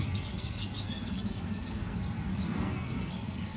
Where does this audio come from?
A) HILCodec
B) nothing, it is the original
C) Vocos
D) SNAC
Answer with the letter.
D